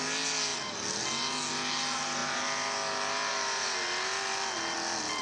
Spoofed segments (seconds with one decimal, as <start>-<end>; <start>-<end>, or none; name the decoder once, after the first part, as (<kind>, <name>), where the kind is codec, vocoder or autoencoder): none